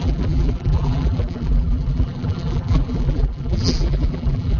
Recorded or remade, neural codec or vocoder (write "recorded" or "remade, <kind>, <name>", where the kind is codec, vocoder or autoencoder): remade, vocoder, BigVGAN v2